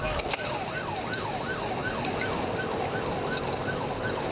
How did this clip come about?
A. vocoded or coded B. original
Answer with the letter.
B